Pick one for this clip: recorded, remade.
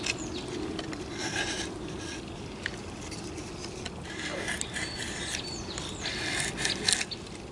recorded